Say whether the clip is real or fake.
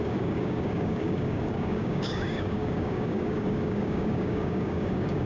fake